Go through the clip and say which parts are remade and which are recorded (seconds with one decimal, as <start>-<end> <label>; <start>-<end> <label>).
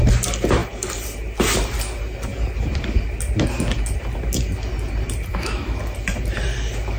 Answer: 0.0-5.3 recorded; 5.3-5.8 remade; 5.8-7.0 recorded